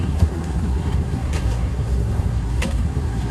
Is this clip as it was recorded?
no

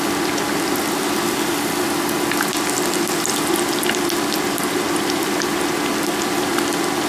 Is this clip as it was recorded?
yes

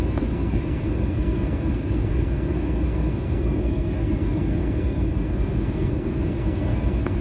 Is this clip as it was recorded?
no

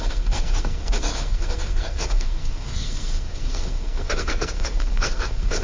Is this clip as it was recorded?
no